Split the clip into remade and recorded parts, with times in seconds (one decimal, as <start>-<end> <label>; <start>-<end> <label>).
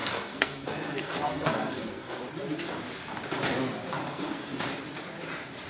0.0-2.2 remade; 2.2-4.0 recorded; 4.0-4.7 remade; 4.7-5.7 recorded